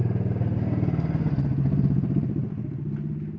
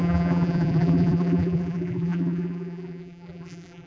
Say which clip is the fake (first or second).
second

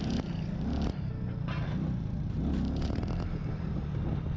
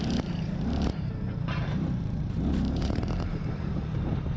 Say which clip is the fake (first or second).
second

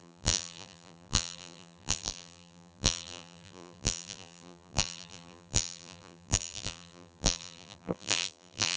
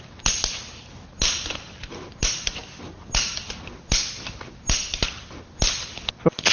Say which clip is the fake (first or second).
first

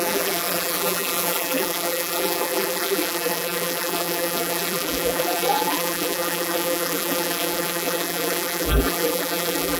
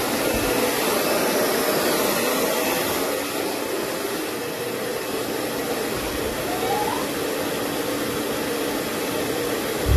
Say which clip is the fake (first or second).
first